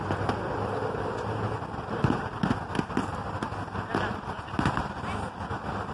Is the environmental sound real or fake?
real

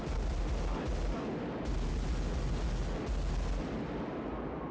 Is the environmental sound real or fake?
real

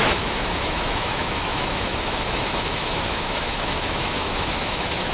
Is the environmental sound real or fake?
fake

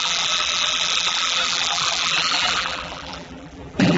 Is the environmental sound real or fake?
fake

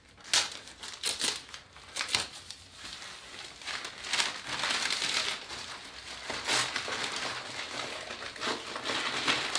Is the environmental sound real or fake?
real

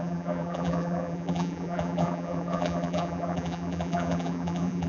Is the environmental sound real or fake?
fake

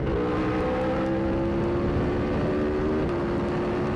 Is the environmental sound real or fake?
real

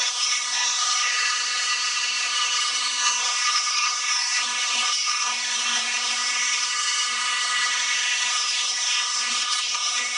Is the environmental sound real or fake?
fake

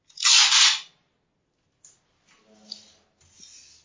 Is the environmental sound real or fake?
real